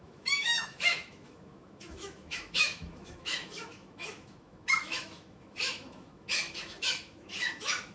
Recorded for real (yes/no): no